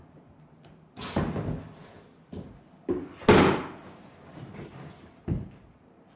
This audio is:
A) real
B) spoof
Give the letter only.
A